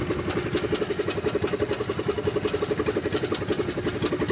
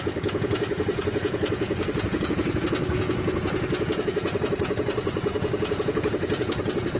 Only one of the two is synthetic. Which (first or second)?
second